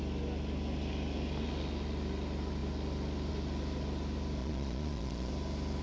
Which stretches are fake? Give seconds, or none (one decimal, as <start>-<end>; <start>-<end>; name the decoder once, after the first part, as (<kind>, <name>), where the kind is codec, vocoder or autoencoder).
4.4-5.3 (vocoder, Vocos)